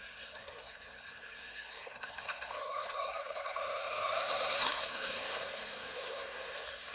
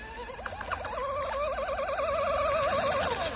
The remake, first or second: first